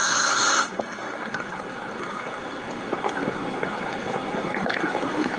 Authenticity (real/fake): fake